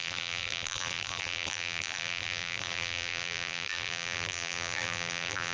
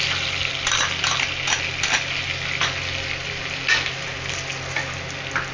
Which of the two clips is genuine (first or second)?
second